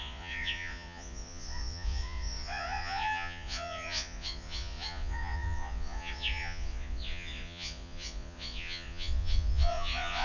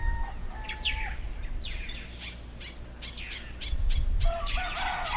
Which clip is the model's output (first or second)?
first